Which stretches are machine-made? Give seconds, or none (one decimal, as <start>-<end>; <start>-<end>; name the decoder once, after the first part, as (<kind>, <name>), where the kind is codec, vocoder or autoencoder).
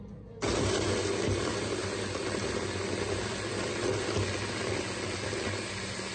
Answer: none